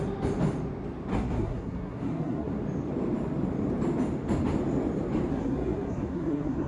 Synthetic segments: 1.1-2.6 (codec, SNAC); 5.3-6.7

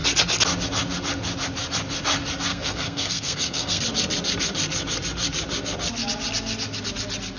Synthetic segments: 2.5-3.8 (codec, SNAC)

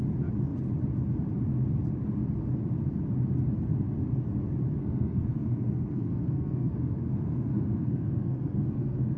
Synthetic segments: 4.8-9.2 (codec, SNAC)

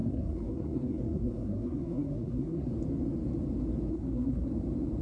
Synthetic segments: 0.0-2.7 (codec, SNAC); 3.9-4.5

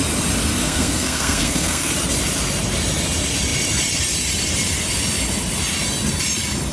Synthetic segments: 0.6-1.9 (codec, SNAC)

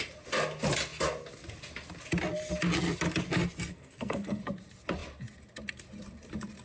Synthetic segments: 3.7-4.4 (codec, SNAC)

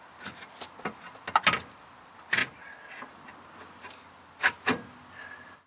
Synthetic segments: none